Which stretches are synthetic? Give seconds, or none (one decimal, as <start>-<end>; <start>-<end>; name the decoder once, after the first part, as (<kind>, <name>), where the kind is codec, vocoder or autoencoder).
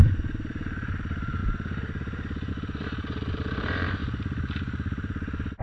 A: 0.0-4.0 (vocoder, BigVGAN v2)